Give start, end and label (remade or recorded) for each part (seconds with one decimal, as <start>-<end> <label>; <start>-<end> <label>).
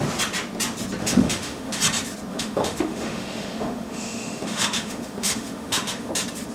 0.0-1.0 recorded; 1.0-1.8 remade; 1.8-2.3 recorded; 2.3-6.1 remade; 6.1-6.5 recorded